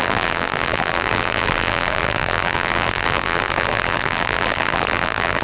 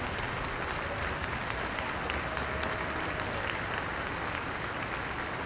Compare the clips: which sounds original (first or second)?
second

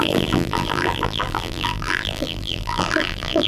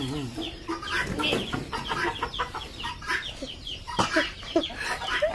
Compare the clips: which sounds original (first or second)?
second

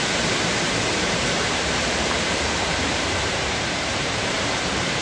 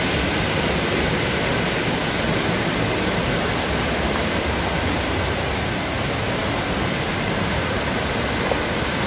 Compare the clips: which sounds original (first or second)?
second